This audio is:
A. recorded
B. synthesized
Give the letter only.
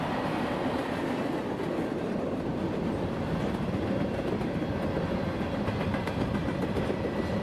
A